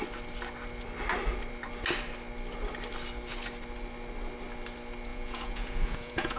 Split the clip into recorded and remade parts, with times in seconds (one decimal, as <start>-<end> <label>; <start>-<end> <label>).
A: 0.0-5.1 recorded; 5.1-6.4 remade